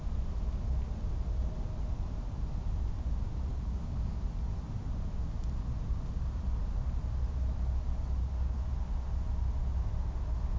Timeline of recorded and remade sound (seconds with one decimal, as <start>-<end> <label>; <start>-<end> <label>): 0.0-3.5 recorded; 3.5-4.2 remade; 4.2-8.2 recorded; 8.2-8.7 remade; 8.7-10.6 recorded